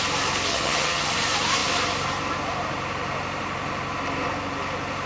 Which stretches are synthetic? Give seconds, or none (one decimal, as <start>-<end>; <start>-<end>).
0.5-1.1